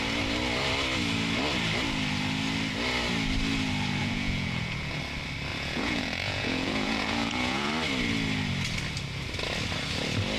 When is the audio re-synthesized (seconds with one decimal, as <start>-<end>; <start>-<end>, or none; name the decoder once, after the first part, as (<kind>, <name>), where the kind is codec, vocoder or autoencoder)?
4.0-5.0 (vocoder, Vocos); 5.5-7.7

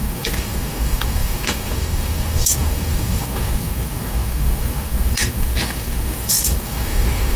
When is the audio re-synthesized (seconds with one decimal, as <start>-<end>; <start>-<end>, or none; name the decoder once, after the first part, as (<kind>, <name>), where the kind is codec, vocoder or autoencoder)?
0.0-7.4 (codec, DAC)